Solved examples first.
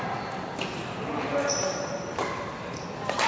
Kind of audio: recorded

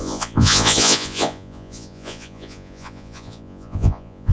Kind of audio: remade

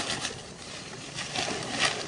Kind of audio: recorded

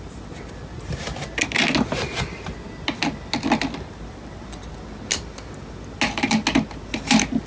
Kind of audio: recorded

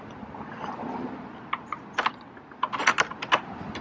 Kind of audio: recorded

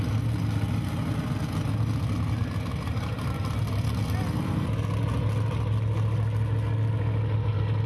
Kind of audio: recorded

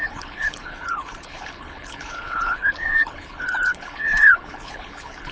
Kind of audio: remade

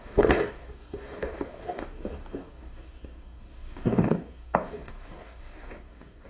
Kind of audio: remade